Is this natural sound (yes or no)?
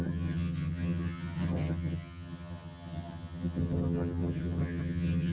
no